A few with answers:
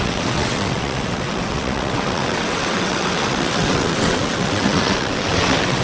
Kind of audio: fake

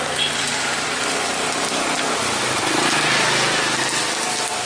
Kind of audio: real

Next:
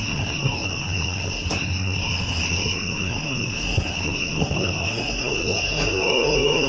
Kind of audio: fake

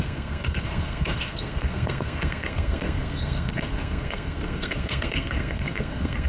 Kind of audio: fake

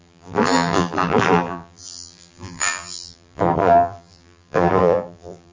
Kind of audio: fake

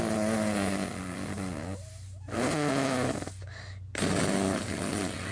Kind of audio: real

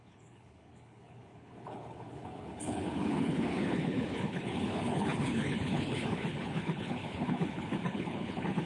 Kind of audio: fake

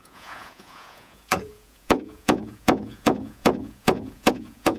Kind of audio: fake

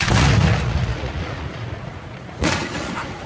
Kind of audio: fake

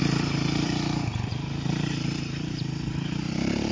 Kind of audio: fake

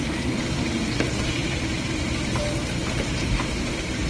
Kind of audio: fake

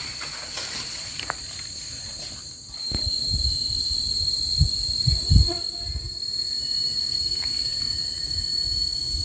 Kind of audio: fake